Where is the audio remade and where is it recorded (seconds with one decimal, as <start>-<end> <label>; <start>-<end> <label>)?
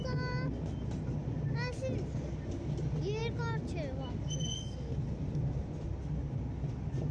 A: 0.0-7.1 recorded